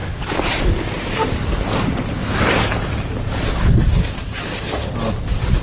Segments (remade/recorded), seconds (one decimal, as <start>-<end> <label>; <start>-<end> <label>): 0.0-5.6 recorded